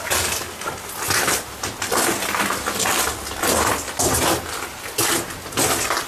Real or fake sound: real